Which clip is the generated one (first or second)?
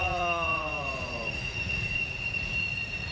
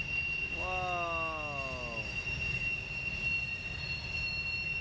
first